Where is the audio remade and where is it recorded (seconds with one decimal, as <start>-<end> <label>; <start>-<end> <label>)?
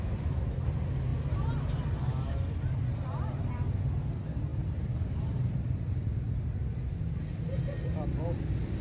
0.0-8.8 recorded